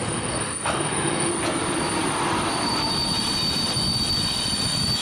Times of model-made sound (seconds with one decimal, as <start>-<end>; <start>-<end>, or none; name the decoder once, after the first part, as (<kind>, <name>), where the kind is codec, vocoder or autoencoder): 0.0-1.3 (autoencoder, DAC-VAE)